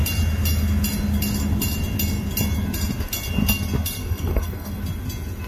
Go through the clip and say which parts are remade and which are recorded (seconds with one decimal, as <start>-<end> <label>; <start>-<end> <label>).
0.0-4.0 recorded; 4.0-4.8 remade; 4.8-5.5 recorded